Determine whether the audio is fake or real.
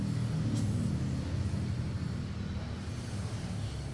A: real